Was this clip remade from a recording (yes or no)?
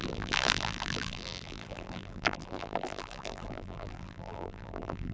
yes